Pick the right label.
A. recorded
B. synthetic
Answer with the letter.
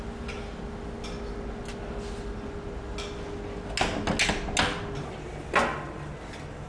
A